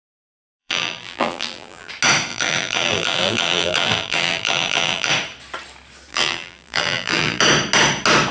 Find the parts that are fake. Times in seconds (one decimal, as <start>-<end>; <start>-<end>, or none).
0.6-1.9; 2.3-5.1; 6.1-7.4